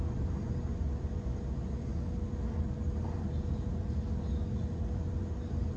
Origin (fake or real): real